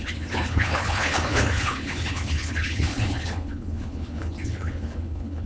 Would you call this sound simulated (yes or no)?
yes